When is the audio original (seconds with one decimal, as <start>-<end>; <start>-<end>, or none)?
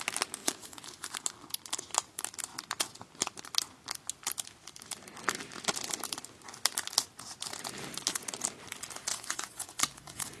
0.0-0.4; 1.1-9.1